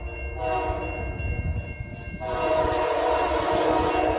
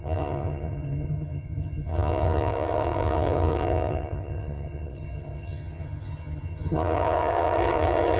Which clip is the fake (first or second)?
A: second